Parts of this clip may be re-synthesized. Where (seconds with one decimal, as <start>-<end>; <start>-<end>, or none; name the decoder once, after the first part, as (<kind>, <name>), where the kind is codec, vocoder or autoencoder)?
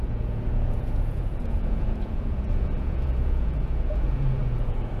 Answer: 0.0-5.0 (vocoder, Vocos)